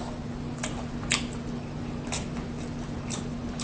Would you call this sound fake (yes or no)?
no